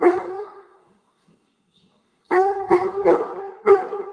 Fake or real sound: fake